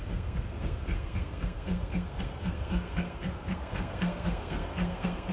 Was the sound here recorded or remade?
remade